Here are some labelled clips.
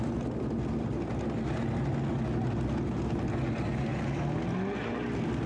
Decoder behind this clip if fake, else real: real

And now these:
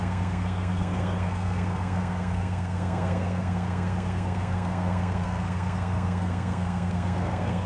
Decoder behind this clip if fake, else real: fake, codec, SNAC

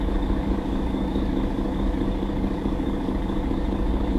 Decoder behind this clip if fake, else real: fake, codec, DAC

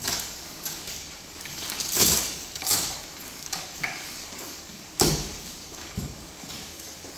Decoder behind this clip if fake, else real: fake, codec, DAC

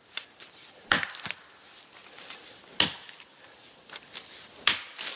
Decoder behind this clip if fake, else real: real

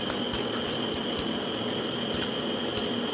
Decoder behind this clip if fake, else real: real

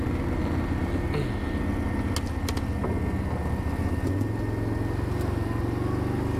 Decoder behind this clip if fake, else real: real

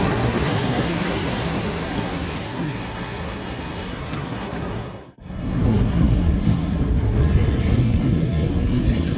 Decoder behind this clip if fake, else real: fake, codec, SNAC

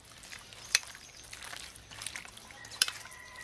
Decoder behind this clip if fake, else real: fake, vocoder, BigVGAN v2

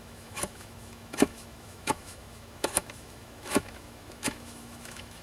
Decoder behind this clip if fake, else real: fake, autoencoder, DAC-VAE